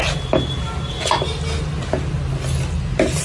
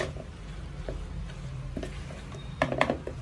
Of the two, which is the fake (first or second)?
second